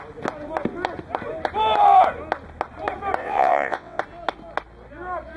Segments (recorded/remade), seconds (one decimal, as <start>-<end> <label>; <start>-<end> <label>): 0.0-3.2 recorded; 3.2-4.0 remade; 4.0-5.4 recorded